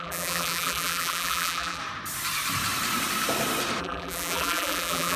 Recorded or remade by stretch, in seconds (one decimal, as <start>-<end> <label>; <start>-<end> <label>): 0.0-1.8 remade; 1.8-3.8 recorded; 3.8-5.2 remade